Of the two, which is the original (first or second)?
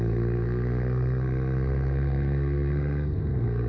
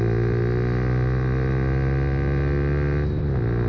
second